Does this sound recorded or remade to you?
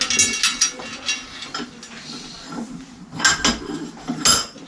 recorded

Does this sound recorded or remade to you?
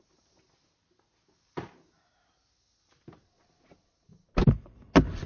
recorded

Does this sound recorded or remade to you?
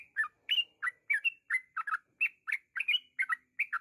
recorded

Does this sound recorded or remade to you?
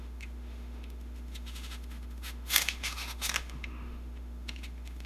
remade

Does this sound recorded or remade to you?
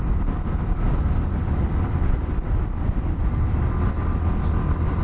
recorded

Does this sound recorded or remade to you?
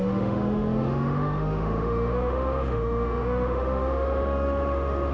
remade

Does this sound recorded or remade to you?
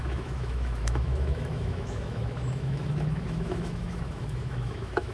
remade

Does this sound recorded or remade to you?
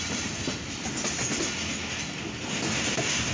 recorded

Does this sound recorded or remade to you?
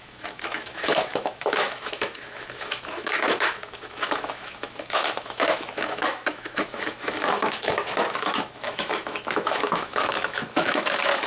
remade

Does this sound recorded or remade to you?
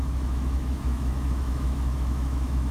remade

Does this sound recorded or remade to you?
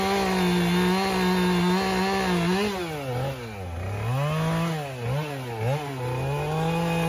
recorded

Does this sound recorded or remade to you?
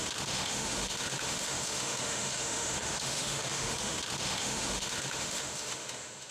remade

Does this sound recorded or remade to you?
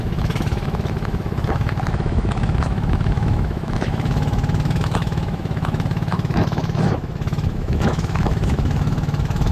remade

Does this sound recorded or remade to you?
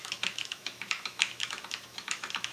remade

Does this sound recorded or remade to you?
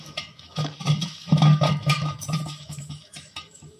remade